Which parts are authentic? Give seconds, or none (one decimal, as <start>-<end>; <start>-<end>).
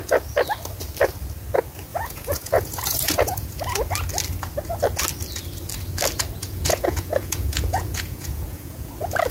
0.0-1.9; 3.6-6.4; 8.9-9.3